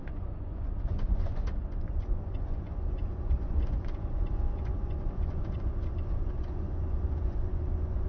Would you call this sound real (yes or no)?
no